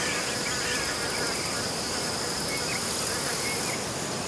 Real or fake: real